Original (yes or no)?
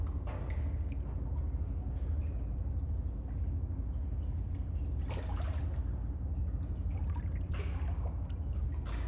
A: yes